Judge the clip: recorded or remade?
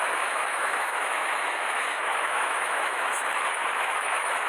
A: remade